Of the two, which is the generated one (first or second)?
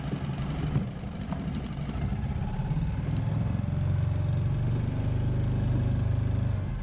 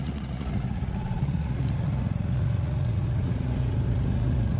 second